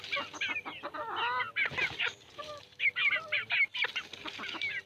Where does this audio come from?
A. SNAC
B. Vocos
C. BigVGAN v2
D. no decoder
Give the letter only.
D